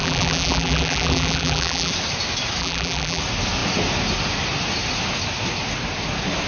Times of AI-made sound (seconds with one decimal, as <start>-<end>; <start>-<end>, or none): 0.0-1.9; 2.6-3.2